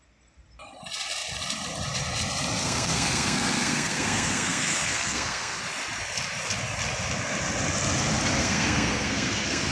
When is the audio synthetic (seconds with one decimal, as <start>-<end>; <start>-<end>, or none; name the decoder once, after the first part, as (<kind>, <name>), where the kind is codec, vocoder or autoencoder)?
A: 2.6-5.6 (codec, SNAC); 8.4-9.7